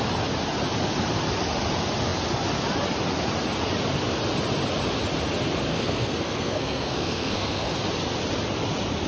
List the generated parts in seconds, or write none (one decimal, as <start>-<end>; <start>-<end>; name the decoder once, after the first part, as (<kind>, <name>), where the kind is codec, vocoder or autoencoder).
5.7-7.8 (codec, SNAC)